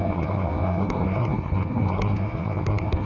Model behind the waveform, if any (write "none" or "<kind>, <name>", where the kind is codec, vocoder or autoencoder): codec, SNAC